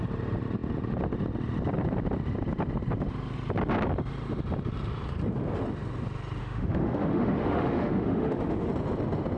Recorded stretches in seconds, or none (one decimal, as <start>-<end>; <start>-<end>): 0.0-6.4; 8.7-9.4